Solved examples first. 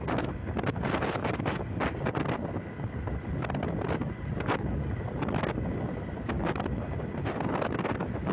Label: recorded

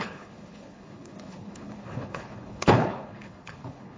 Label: remade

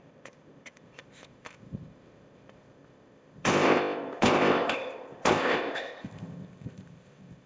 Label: remade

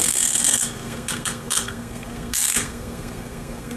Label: remade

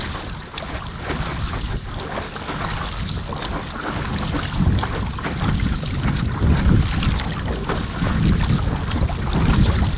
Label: recorded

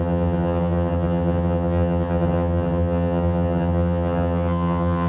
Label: remade